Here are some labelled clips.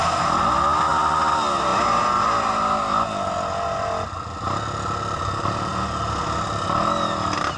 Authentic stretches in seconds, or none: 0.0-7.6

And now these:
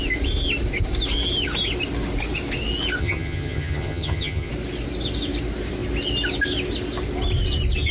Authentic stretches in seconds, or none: 0.0-3.0; 4.5-7.9

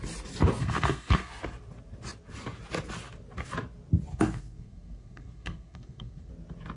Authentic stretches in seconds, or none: 0.0-0.6; 1.3-4.1; 6.3-6.8

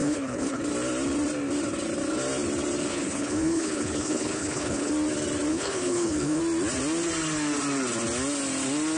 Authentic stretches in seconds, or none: 0.6-2.9; 4.9-5.5; 6.4-9.0

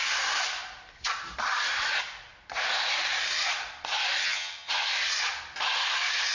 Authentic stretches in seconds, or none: 0.0-4.2; 4.7-6.3